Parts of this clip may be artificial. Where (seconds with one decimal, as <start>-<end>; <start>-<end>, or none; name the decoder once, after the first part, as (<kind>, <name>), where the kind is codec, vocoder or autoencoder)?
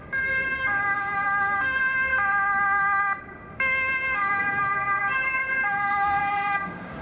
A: 0.0-2.1 (codec, DAC); 3.2-7.0